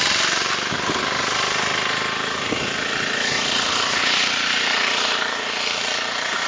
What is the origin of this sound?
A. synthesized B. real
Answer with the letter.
A